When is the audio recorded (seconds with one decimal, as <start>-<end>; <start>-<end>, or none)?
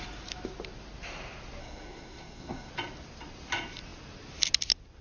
0.0-1.6; 2.7-5.0